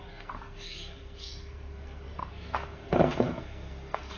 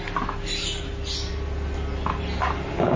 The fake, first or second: first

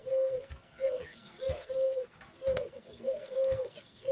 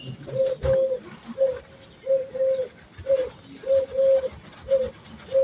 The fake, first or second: first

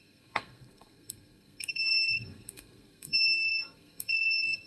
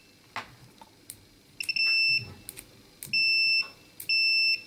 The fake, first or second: first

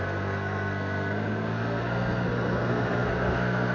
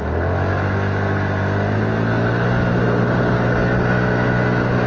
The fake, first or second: first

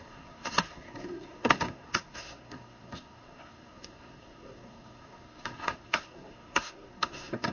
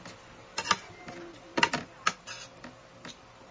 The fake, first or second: first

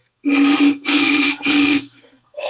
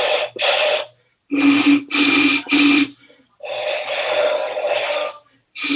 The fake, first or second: first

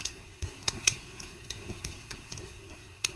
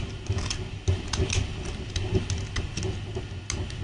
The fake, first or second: first